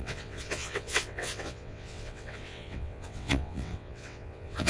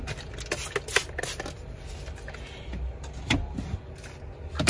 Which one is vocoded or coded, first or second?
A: first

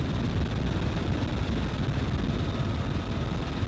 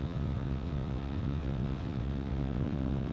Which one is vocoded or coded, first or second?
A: second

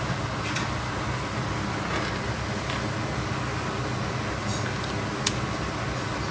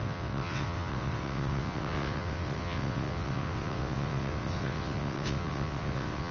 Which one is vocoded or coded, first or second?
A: second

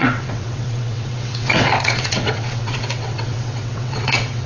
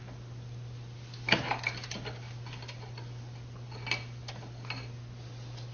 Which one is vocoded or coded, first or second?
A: first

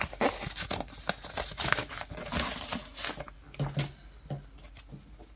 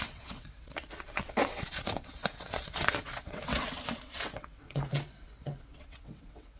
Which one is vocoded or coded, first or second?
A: second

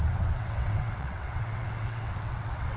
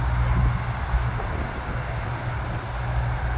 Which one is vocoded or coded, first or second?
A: first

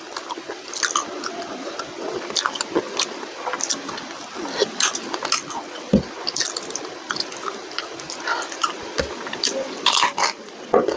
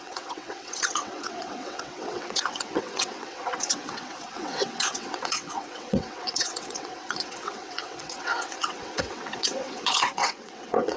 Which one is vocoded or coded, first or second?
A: second